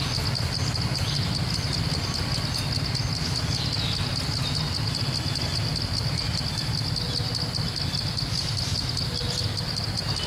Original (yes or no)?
yes